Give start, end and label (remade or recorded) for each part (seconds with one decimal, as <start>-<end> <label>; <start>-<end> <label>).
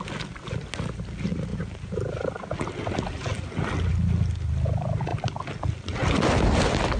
0.0-1.5 recorded; 1.5-2.0 remade; 2.0-7.0 recorded